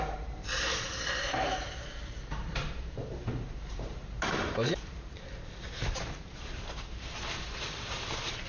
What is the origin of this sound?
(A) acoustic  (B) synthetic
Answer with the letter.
B